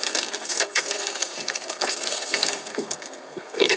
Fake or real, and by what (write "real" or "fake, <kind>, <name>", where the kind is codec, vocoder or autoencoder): fake, codec, SNAC